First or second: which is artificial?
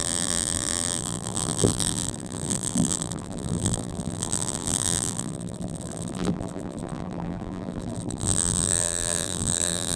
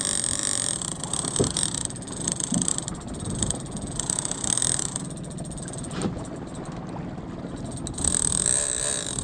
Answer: first